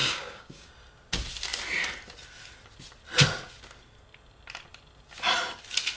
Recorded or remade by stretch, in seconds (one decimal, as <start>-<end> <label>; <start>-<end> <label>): 0.0-0.7 remade; 0.7-6.0 recorded